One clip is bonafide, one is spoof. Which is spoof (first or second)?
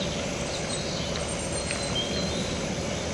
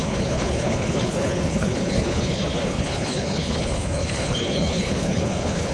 second